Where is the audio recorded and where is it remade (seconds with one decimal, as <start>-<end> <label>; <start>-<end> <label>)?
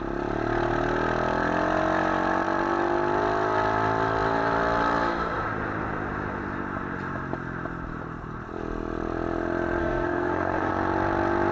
0.0-9.8 recorded; 9.8-10.7 remade; 10.7-11.5 recorded